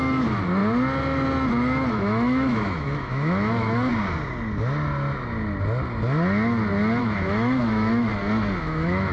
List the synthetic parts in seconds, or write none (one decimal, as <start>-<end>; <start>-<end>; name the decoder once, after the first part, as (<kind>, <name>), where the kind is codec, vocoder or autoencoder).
0.0-0.6 (autoencoder, DAC-VAE); 1.9-3.9; 7.0-8.1; 8.6-9.1

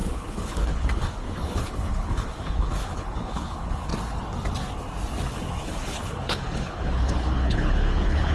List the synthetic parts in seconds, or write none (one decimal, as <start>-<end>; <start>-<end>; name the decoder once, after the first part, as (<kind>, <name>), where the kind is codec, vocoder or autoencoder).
0.0-3.9 (codec, HILCodec); 5.3-8.3

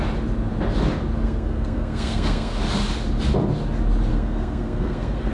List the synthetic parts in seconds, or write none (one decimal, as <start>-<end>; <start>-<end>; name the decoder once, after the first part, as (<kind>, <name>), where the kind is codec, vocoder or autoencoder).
1.2-2.6 (codec, SNAC); 4.1-5.3

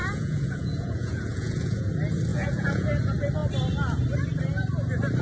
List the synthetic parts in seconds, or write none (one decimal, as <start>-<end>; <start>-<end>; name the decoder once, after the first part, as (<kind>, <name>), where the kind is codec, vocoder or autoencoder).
0.0-1.9 (vocoder, Vocos); 2.3-2.9

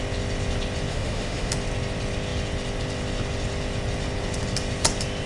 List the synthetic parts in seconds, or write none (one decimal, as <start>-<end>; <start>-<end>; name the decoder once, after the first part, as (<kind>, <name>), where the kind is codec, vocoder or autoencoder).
0.9-1.5 (autoencoder, DAC-VAE)

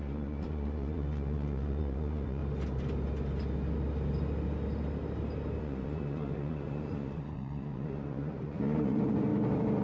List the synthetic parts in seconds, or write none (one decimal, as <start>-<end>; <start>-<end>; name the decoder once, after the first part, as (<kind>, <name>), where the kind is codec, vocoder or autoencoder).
0.0-2.4 (vocoder, Vocos); 5.6-9.3